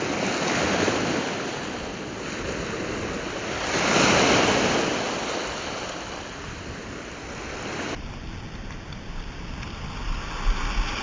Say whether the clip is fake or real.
real